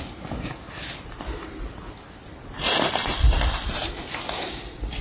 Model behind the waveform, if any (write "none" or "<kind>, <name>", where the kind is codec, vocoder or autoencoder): none